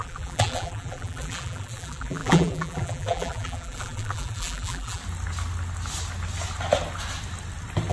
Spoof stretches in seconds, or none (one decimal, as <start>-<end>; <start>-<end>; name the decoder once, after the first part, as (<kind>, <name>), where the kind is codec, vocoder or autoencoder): 0.0-5.0 (vocoder, BigVGAN v2)